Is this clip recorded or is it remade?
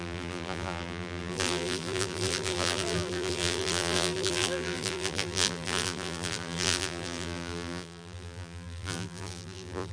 remade